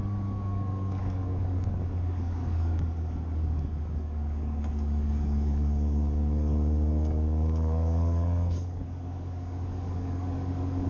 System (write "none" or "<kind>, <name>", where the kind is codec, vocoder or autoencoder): codec, DAC